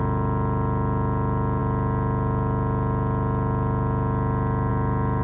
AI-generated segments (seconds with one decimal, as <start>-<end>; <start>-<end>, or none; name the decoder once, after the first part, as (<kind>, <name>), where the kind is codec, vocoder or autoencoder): none